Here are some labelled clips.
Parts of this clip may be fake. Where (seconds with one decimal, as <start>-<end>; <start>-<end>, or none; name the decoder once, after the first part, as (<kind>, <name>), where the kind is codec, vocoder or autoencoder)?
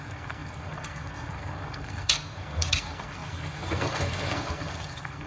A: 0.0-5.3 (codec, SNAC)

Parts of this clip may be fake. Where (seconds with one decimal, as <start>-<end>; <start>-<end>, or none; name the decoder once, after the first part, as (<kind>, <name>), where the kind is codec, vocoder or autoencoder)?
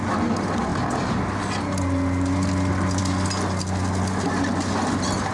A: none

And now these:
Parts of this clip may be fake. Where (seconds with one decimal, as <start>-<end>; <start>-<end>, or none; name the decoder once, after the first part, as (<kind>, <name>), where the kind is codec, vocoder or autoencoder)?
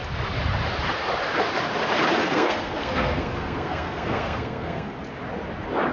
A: 2.2-4.9 (codec, SNAC)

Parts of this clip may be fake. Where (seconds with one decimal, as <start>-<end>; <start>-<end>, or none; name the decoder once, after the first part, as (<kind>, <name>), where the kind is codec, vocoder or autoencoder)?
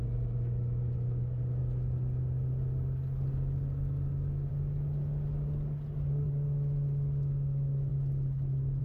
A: none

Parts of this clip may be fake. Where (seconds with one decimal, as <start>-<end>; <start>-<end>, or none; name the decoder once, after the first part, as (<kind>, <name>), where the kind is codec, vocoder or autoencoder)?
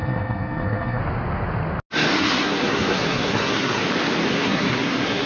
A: 0.0-1.0 (codec, SNAC); 2.1-3.8; 4.3-5.3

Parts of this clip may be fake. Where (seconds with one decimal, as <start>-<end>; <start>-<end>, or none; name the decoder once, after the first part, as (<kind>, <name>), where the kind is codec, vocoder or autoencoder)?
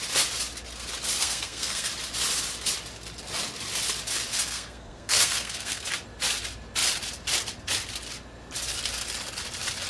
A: 1.2-1.9 (codec, SNAC); 4.3-5.8